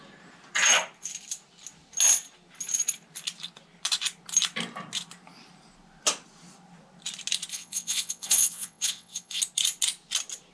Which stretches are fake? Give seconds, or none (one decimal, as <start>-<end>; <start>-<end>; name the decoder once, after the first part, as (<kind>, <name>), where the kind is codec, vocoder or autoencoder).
7.5-9.4 (vocoder, WaveNeXt)